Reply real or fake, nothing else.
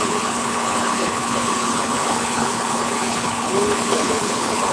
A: fake